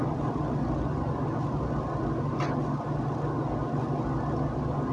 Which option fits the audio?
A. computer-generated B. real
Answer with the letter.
B